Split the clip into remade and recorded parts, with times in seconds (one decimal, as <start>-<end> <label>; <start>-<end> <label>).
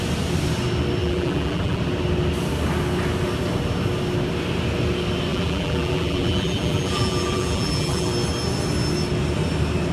0.0-1.0 recorded; 1.0-1.8 remade; 1.8-5.3 recorded; 5.3-8.1 remade; 8.1-9.9 recorded